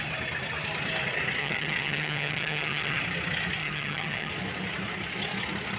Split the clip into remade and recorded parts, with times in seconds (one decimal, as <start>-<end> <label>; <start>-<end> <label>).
0.0-1.4 recorded; 1.4-3.0 remade; 3.0-3.6 recorded; 3.6-4.3 remade; 4.3-5.8 recorded